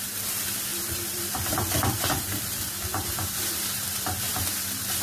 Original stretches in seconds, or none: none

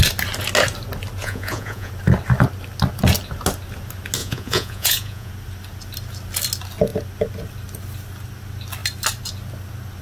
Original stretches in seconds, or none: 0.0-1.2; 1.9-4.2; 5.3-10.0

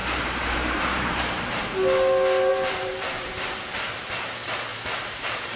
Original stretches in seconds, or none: 1.4-2.5; 3.6-4.7